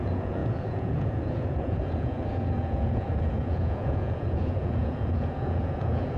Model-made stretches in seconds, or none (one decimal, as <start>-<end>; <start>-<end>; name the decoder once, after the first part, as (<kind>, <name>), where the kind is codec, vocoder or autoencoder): 0.0-6.2 (vocoder, Vocos)